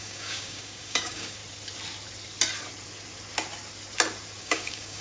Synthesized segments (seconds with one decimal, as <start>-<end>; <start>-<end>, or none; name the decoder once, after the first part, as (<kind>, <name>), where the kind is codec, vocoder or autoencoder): 0.0-1.4 (codec, DAC); 4.4-5.0